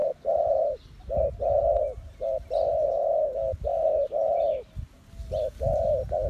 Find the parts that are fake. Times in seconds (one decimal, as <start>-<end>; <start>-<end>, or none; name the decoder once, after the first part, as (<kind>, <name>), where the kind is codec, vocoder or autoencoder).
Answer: 0.0-1.0 (vocoder, BigVGAN v2)